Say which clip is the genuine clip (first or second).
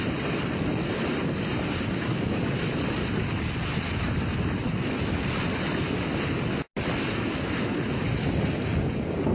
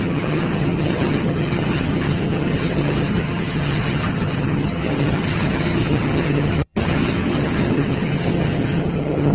first